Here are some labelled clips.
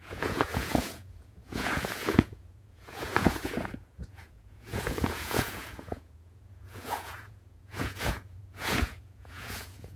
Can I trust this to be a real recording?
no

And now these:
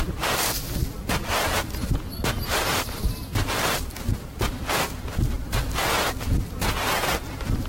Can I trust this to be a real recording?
yes